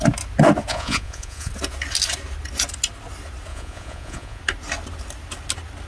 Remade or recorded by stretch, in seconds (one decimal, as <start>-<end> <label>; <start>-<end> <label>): 0.0-0.7 recorded; 0.7-1.5 remade; 1.5-3.5 recorded; 3.5-4.4 remade; 4.4-5.9 recorded